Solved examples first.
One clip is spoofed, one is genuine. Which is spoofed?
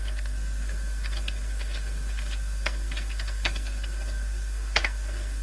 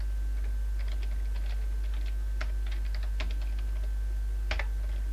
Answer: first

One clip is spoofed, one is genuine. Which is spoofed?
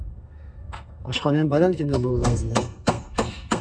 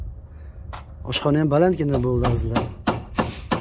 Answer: first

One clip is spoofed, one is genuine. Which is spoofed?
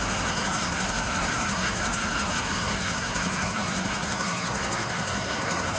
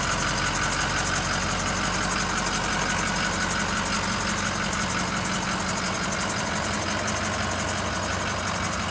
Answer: first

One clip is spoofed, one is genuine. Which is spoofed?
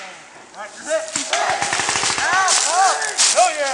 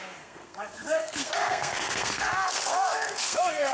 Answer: second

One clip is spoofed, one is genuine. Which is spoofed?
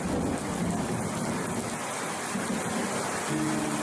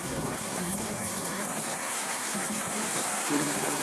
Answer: second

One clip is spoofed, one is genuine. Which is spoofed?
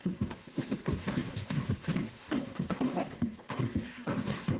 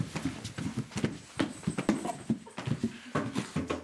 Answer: first